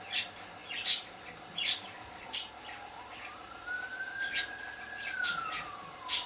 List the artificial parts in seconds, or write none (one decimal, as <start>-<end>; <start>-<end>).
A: 0.6-4.4